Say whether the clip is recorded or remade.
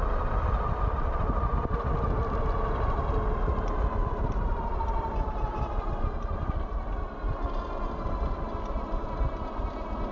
recorded